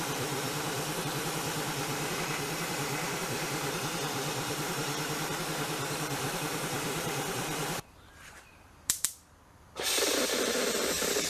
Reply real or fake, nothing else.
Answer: fake